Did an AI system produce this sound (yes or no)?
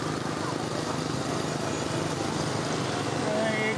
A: no